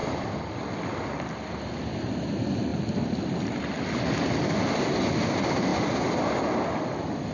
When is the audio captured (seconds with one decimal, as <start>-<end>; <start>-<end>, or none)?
2.1-2.7; 3.6-5.7; 6.4-7.3